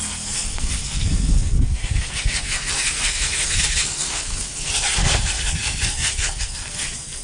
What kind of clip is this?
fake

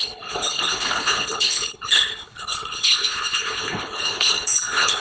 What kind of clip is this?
fake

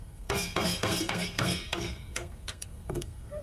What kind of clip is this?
fake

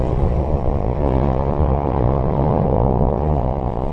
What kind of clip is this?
fake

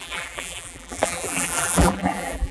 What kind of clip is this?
fake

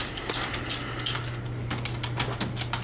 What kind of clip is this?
real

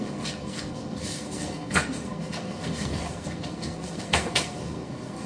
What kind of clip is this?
fake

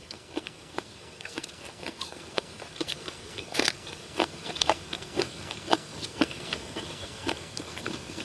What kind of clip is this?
fake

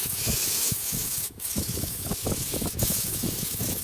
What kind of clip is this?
fake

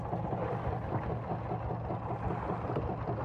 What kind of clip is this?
real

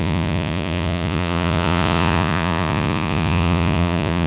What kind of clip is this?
fake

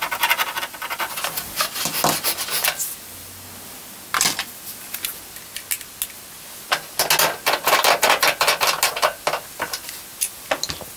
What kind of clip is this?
real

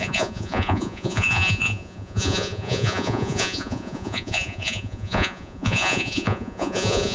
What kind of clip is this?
fake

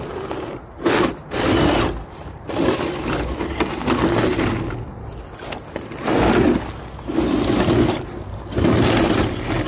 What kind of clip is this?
real